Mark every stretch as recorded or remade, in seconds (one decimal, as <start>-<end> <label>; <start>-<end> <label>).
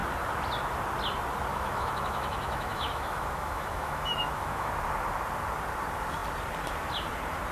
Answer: 0.0-1.5 recorded; 1.5-4.7 remade; 4.7-7.5 recorded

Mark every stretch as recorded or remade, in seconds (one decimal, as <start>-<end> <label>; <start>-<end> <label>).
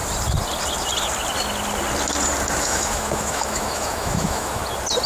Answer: 0.0-2.6 recorded; 2.6-4.6 remade; 4.6-5.1 recorded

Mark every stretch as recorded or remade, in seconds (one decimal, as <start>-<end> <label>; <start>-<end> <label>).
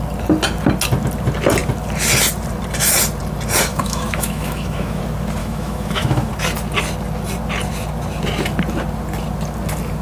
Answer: 0.0-3.7 recorded; 3.7-5.0 remade; 5.0-5.4 recorded; 5.4-6.3 remade; 6.3-10.0 recorded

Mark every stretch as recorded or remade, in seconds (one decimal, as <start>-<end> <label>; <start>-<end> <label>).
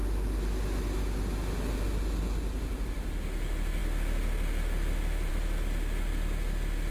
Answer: 0.0-6.9 recorded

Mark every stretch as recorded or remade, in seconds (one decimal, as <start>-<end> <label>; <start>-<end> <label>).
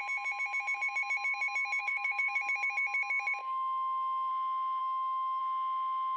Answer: 0.0-1.8 recorded; 1.8-2.4 remade; 2.4-3.4 recorded; 3.4-4.3 remade; 4.3-4.8 recorded; 4.8-5.4 remade; 5.4-6.2 recorded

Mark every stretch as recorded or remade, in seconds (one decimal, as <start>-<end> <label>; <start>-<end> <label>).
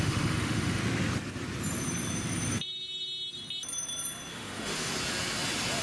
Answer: 0.0-0.8 remade; 0.8-4.3 recorded; 4.3-4.9 remade; 4.9-5.8 recorded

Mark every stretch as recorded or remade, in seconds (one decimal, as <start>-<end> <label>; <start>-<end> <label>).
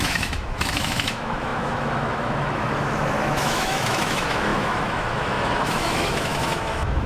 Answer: 0.0-7.1 remade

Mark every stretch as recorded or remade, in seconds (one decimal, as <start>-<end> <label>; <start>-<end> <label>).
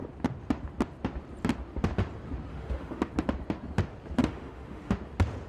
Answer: 0.0-2.5 recorded; 2.5-3.1 remade; 3.1-4.2 recorded; 4.2-4.9 remade; 4.9-5.5 recorded